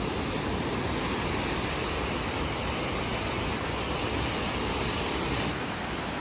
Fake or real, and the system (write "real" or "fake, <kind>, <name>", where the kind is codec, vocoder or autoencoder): real